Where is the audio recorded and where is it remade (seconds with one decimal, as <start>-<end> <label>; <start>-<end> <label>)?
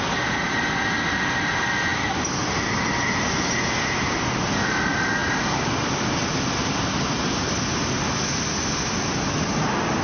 0.0-10.0 recorded